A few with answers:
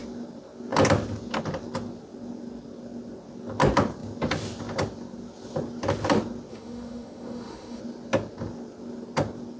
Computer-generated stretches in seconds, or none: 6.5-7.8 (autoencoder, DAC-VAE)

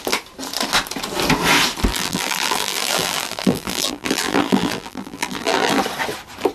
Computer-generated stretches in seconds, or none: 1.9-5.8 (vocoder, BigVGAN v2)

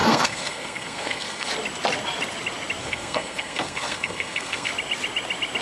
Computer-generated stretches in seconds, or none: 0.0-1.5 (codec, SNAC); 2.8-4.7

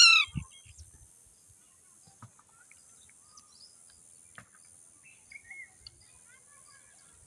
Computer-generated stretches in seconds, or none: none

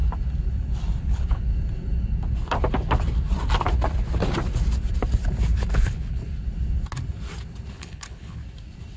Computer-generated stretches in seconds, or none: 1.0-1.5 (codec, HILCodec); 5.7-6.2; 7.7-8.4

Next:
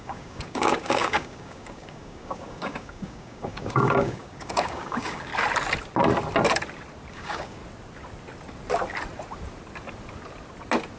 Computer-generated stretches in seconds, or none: 0.0-5.3 (codec, DAC); 7.1-7.6

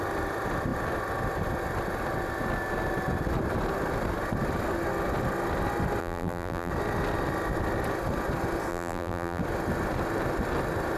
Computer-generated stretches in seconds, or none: 6.0-6.7 (vocoder, BigVGAN v2); 8.7-9.4